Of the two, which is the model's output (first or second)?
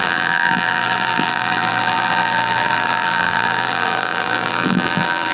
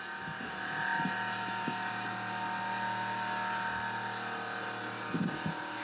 first